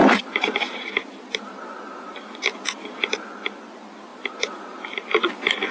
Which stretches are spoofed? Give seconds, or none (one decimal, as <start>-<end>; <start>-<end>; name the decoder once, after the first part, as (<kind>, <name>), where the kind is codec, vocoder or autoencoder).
0.0-3.1 (vocoder, BigVGAN v2); 4.1-5.3